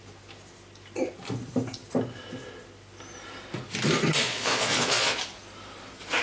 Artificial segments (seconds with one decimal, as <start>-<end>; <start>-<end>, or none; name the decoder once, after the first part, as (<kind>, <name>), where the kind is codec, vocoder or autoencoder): 4.2-5.2 (vocoder, Vocos)